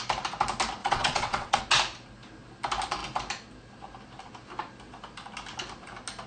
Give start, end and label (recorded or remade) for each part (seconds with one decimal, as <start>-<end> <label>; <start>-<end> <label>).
0.0-0.8 recorded; 0.8-1.6 remade; 1.6-6.3 recorded